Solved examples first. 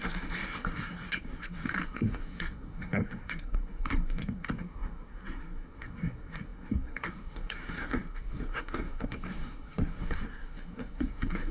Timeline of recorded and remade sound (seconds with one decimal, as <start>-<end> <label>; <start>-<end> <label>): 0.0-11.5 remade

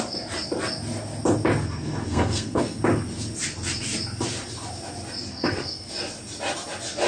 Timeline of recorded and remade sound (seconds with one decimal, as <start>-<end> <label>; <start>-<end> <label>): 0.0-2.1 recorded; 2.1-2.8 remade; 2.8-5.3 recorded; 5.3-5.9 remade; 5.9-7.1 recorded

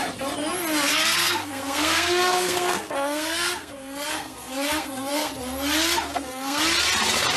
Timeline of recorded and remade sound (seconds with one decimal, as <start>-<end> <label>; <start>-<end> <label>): 0.0-0.9 recorded; 0.9-5.3 remade; 5.3-6.1 recorded; 6.1-6.6 remade; 6.6-7.4 recorded